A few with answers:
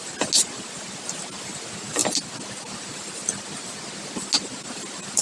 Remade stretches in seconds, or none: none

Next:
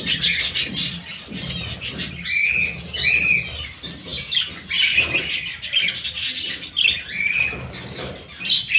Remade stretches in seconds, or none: none

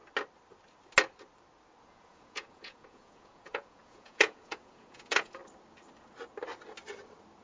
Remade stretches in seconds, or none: 1.8-5.4 (vocoder, Vocos)

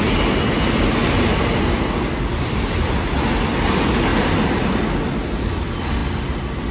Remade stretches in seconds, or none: none

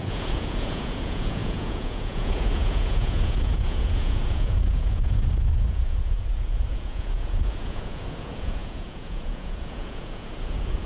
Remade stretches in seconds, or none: 0.0-10.9 (vocoder, Vocos)

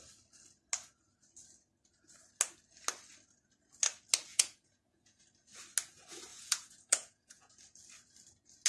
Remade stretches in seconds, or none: 4.3-5.2 (vocoder, Vocos); 6.3-7.5

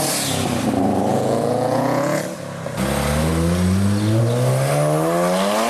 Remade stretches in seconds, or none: 1.1-2.2 (vocoder, Vocos)